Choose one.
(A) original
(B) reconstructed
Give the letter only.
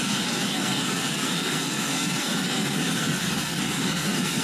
B